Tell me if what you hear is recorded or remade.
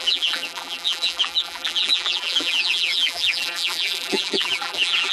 remade